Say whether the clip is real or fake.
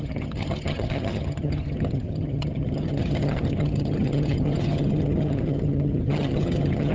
fake